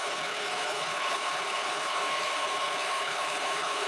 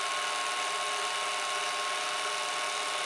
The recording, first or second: second